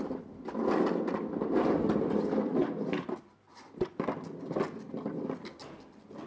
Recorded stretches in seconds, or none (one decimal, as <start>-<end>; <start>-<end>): 0.0-6.3